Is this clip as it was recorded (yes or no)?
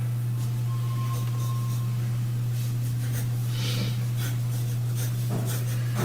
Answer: yes